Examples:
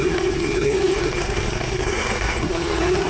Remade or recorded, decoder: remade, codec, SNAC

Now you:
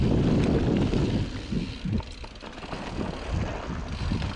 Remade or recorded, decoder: recorded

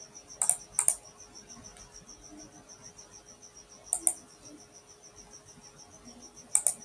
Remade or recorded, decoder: recorded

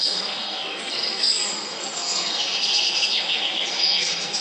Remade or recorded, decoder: remade, codec, SNAC